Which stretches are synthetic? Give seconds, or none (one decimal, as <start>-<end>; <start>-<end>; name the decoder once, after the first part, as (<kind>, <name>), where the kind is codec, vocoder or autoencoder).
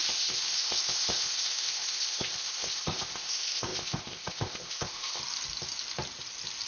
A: 0.0-5.2 (codec, ZipCodec)